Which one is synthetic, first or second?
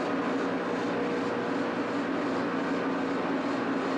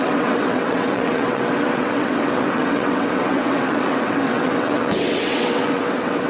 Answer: second